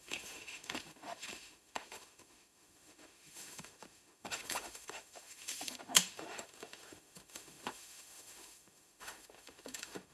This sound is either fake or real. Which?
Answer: fake